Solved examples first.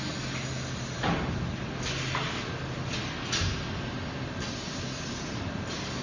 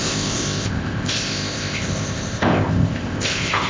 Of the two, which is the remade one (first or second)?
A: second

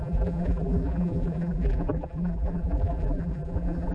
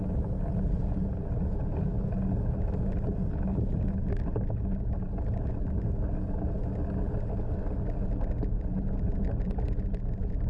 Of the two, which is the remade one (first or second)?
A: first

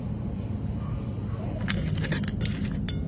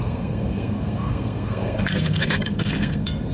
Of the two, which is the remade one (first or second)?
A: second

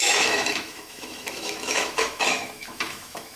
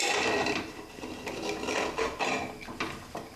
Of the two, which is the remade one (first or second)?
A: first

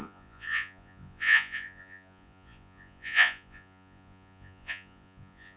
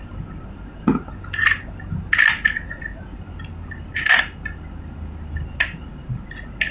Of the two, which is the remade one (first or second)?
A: first